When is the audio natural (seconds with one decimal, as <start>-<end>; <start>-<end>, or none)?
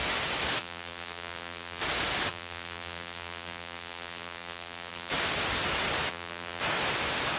0.0-0.6; 1.8-2.3; 5.1-6.1; 6.6-7.4